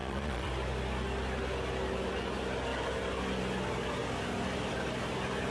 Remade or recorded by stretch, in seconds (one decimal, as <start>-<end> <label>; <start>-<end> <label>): 0.0-0.5 remade; 0.5-5.5 recorded